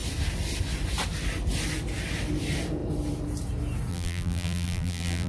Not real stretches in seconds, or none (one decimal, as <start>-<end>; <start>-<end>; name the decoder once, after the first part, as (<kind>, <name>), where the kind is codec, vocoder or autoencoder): 3.9-5.3 (vocoder, BigVGAN v2)